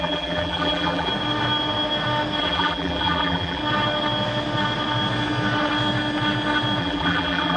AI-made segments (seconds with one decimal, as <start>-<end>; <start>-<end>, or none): 0.0-1.1; 2.4-3.6; 6.8-7.6